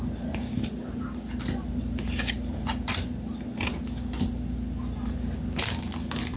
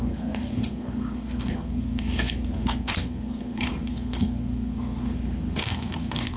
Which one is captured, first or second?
first